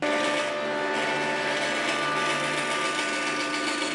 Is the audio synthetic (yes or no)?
no